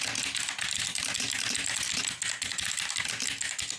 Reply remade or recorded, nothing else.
recorded